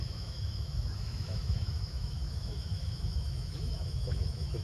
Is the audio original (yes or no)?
no